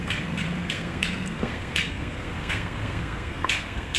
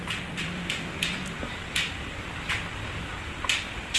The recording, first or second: second